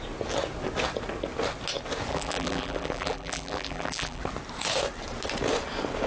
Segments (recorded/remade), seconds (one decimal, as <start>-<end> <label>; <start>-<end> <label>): 0.0-2.1 recorded; 2.1-4.2 remade; 4.2-6.1 recorded